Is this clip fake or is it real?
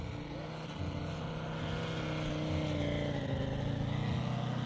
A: real